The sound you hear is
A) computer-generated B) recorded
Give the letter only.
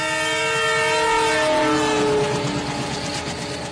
B